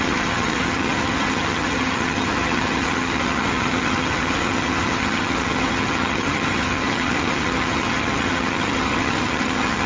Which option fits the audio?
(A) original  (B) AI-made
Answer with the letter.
B